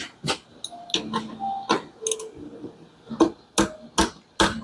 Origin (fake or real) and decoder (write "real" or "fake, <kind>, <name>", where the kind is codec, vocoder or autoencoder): real